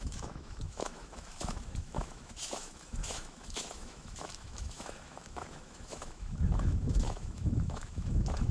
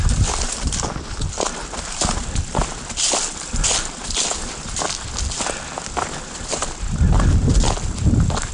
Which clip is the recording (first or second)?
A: second